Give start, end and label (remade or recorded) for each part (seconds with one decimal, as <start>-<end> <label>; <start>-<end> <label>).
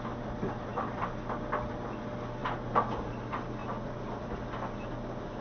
0.0-0.7 recorded; 0.7-1.3 remade; 1.3-2.4 recorded; 2.4-3.1 remade; 3.1-3.6 recorded; 3.6-4.4 remade; 4.4-5.4 recorded